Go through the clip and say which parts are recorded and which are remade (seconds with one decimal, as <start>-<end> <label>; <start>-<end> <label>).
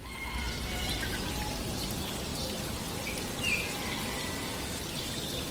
0.0-5.5 recorded